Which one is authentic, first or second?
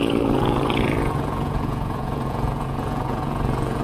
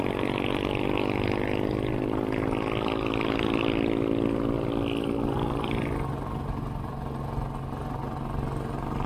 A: second